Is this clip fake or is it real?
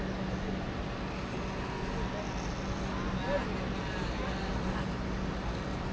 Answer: real